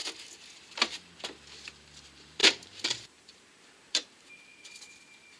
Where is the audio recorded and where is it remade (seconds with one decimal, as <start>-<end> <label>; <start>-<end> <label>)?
0.0-2.4 recorded; 2.4-4.3 remade; 4.3-5.4 recorded